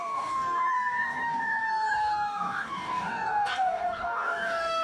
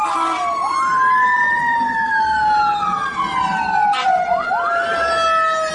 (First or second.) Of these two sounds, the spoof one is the first